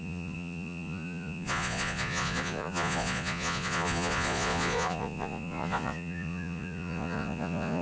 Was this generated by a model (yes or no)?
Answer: yes